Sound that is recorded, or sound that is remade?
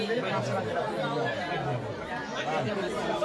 recorded